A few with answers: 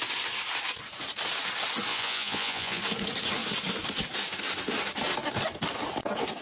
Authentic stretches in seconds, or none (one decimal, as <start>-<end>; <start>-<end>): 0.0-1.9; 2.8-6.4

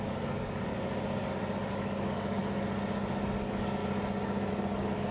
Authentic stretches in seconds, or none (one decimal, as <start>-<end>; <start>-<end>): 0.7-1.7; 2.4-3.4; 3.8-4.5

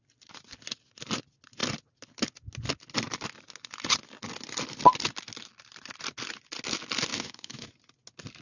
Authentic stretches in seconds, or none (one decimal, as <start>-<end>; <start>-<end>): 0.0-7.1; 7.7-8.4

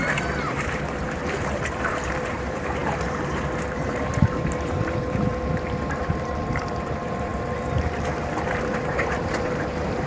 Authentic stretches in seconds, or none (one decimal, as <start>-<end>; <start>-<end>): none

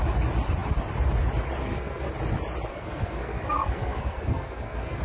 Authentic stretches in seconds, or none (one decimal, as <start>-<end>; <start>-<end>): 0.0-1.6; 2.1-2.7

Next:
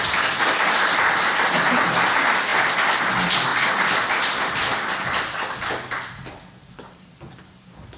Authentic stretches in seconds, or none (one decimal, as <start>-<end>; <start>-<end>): 0.0-8.0

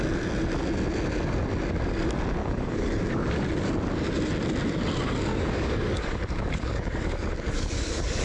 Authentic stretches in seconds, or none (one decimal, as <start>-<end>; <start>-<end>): 0.0-2.4; 3.0-5.3